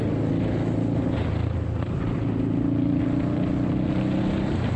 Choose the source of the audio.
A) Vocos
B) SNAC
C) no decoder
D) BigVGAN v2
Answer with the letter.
C